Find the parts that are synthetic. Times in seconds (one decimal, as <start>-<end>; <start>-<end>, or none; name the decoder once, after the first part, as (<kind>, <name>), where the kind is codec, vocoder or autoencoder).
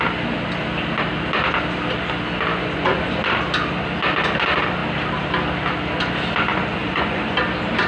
2.5-3.3 (vocoder, Vocos); 6.5-7.4